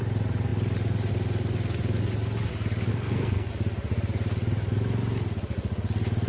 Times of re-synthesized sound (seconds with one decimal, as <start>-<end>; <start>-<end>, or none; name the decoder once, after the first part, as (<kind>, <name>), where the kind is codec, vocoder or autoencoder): 2.9-3.5 (codec, SNAC)